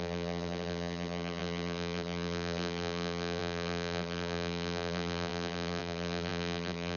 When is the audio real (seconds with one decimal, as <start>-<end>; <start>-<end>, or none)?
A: none